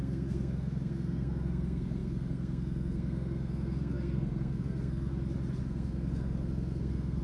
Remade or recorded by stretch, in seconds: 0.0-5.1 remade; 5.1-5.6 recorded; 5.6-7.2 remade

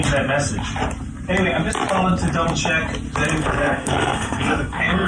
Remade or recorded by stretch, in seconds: 0.0-3.4 recorded; 3.4-5.1 remade